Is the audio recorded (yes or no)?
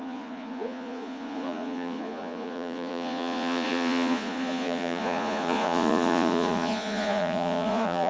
no